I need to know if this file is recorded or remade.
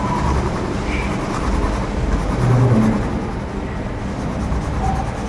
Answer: recorded